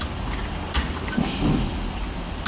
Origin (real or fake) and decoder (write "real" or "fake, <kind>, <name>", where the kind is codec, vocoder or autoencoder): real